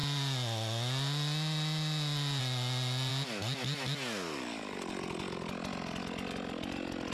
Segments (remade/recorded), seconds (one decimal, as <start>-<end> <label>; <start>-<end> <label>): 0.0-7.1 recorded

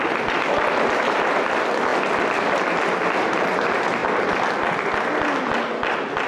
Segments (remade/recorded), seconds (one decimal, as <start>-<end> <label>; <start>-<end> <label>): 0.0-6.3 recorded

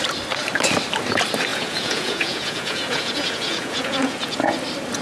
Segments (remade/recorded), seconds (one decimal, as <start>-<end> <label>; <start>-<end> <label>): 0.0-1.5 recorded; 1.5-4.5 remade; 4.5-5.0 recorded

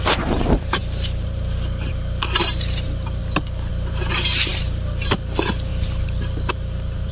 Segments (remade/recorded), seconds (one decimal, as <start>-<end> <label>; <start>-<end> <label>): 0.0-3.2 remade; 3.2-3.7 recorded; 3.7-5.7 remade; 5.7-6.5 recorded; 6.5-7.1 remade